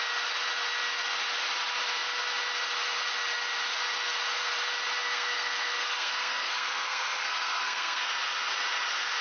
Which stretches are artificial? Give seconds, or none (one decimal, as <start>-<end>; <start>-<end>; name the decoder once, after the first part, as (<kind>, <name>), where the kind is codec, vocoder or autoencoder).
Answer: 5.0-8.0 (codec, SNAC)